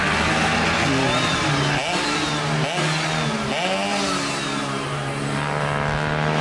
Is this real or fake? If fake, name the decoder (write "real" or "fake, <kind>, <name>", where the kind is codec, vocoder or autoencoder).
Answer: real